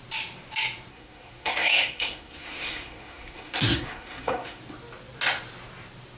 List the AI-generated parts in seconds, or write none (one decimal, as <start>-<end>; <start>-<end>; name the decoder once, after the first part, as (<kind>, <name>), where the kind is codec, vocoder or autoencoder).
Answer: 0.9-4.6 (codec, SNAC)